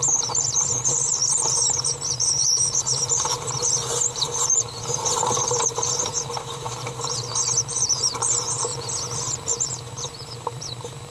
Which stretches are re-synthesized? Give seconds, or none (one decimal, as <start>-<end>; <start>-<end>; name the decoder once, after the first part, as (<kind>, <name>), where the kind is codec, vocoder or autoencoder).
0.0-8.7 (vocoder, BigVGAN v2); 9.5-11.1